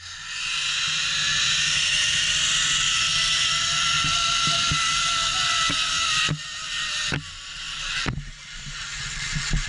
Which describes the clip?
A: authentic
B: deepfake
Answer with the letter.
A